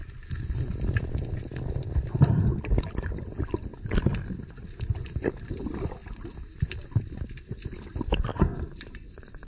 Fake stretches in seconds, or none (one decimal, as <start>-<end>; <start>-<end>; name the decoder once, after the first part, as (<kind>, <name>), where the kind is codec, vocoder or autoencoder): 8.3-9.5 (vocoder, Vocos)